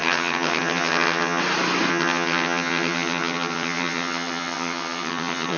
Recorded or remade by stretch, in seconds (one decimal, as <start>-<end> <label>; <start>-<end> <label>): 0.0-1.4 remade; 1.4-1.9 recorded; 1.9-5.6 remade